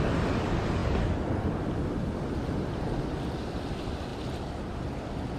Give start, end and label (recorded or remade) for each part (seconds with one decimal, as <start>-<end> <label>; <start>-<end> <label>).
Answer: 0.0-5.4 recorded

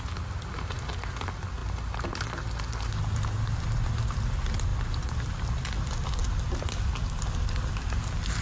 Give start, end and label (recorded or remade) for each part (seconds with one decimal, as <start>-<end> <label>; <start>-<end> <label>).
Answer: 0.0-8.4 recorded